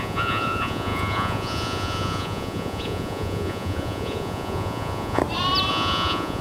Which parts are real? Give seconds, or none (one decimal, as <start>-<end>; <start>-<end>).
5.2-5.7